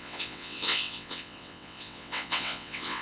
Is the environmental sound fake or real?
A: fake